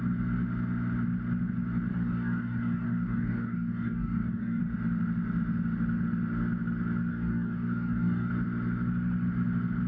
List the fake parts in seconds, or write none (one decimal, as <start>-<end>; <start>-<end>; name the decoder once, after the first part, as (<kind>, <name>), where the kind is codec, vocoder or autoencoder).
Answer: 1.9-4.6 (codec, DAC); 7.1-8.3